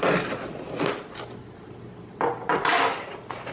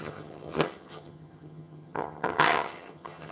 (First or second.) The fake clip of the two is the second